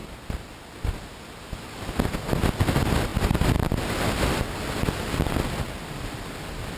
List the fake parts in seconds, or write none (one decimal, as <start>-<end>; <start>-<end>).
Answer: none